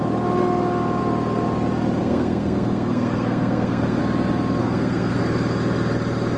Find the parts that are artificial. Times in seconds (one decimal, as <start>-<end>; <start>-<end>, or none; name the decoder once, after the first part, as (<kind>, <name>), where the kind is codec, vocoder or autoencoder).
2.0-4.0 (codec, SNAC); 4.6-5.2